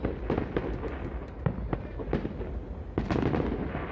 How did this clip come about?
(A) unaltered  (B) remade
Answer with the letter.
A